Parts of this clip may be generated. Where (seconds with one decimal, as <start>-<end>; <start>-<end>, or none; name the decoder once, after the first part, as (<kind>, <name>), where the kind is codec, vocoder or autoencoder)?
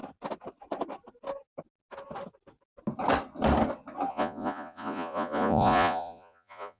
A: 4.1-6.8 (vocoder, Vocos)